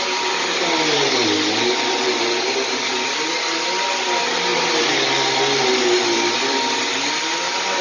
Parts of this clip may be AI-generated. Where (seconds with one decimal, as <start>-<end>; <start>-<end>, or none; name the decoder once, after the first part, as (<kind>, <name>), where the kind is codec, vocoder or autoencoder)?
none